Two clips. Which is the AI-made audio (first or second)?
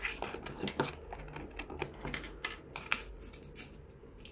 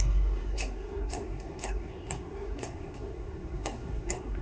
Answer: second